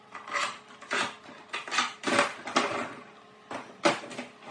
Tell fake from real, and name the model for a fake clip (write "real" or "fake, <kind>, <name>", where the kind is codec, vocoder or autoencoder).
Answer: real